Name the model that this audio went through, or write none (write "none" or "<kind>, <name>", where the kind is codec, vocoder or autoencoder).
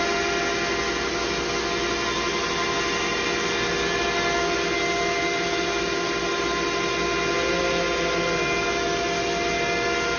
none